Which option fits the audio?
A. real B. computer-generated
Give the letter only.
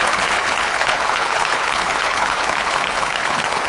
B